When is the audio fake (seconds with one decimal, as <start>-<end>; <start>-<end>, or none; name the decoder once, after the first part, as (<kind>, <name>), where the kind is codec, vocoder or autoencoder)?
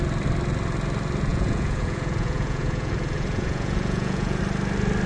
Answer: 1.3-4.4 (vocoder, Vocos)